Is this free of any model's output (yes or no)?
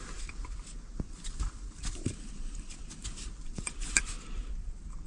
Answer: no